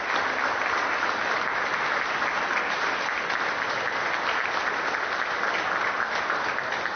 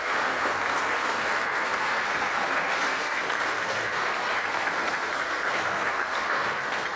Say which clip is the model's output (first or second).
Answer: second